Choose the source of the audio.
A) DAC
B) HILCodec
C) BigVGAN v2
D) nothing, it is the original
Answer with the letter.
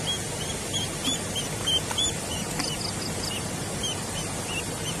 D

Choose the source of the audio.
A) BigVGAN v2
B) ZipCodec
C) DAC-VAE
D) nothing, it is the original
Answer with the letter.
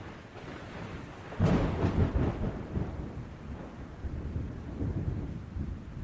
A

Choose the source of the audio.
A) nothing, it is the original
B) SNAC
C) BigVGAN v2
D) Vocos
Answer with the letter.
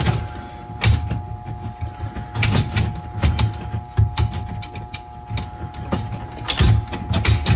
A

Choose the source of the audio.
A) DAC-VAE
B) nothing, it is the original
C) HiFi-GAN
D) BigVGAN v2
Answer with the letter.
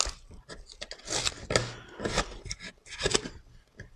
B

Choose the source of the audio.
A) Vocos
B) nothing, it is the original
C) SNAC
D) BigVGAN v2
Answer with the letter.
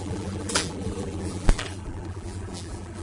D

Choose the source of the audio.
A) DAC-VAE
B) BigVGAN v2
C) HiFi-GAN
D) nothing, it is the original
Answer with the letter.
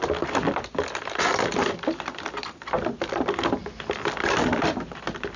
D